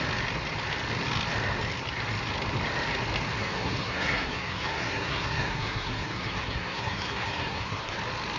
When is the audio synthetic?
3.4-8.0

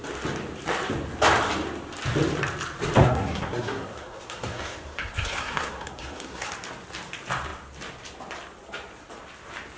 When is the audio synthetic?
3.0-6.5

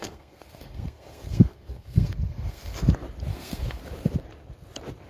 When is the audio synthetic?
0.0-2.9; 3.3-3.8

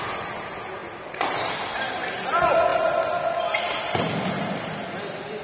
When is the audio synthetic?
none